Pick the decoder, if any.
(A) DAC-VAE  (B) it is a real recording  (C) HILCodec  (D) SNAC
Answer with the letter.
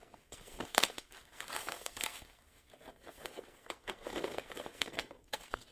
D